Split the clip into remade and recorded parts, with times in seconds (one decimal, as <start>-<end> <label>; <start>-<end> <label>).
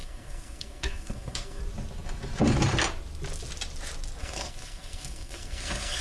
0.0-1.6 remade; 1.6-4.2 recorded; 4.2-6.0 remade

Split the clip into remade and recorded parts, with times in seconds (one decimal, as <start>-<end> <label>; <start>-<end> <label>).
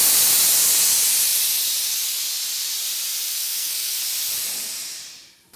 0.0-3.3 recorded; 3.3-4.0 remade; 4.0-5.6 recorded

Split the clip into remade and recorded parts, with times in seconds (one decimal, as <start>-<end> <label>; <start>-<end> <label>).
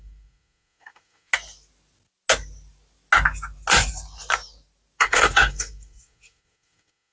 0.0-1.3 remade; 1.3-5.0 recorded; 5.0-7.1 remade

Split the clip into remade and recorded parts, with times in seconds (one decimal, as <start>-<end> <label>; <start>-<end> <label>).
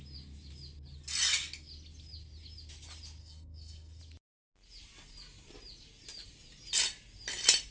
0.0-3.2 recorded; 3.2-4.0 remade; 4.0-7.7 recorded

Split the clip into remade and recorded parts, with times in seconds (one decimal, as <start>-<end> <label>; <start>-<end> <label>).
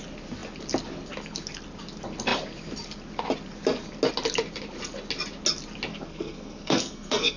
0.0-5.9 recorded; 5.9-7.4 remade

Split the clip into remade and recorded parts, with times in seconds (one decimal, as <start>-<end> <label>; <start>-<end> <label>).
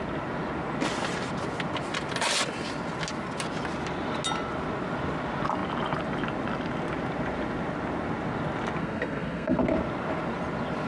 0.0-8.8 recorded; 8.8-9.6 remade; 9.6-10.9 recorded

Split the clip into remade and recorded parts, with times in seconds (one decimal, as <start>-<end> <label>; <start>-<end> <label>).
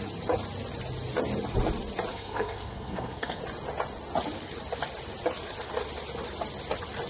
0.0-2.1 recorded; 2.1-3.4 remade; 3.4-7.1 recorded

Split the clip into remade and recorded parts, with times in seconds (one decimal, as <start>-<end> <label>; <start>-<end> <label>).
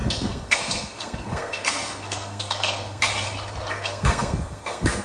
0.0-3.1 remade; 3.1-3.7 recorded; 3.7-5.0 remade